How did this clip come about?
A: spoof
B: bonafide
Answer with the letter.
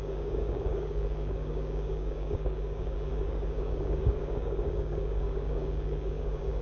A